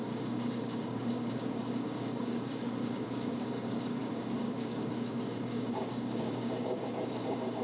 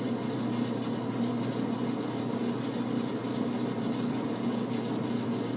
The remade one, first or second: first